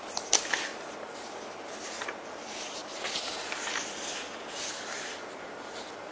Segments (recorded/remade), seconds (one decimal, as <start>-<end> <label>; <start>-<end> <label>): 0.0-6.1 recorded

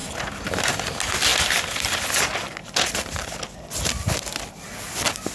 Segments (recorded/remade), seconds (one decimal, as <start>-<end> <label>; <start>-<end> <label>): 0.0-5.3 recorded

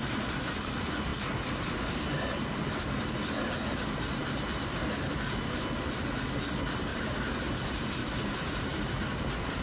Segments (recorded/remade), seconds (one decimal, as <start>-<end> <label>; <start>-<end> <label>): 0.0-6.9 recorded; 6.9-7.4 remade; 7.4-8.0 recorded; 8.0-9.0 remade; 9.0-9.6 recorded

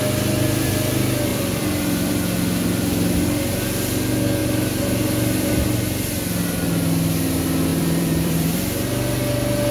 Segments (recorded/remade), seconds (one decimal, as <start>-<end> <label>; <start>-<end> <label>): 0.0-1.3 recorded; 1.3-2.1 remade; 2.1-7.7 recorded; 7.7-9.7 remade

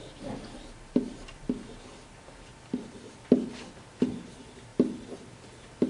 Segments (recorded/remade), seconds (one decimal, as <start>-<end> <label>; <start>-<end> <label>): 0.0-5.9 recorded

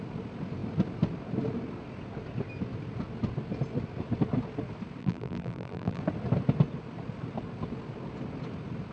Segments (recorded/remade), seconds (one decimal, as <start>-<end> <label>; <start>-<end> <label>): 0.0-5.0 recorded; 5.0-6.0 remade; 6.0-8.9 recorded

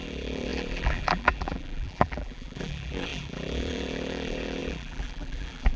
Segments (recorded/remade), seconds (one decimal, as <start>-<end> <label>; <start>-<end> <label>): 0.0-5.8 remade

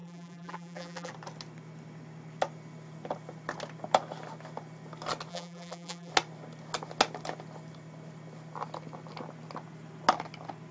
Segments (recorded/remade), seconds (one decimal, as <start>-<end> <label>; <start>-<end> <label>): 0.0-1.1 remade; 1.1-5.3 recorded; 5.3-6.1 remade; 6.1-10.7 recorded